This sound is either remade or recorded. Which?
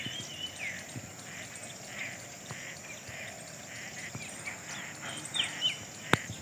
recorded